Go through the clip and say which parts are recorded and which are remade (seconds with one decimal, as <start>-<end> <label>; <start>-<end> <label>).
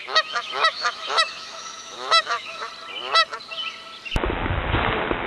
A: 0.0-2.7 remade; 2.7-5.3 recorded